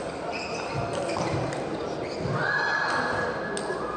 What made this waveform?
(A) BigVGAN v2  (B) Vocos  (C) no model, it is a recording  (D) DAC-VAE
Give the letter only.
C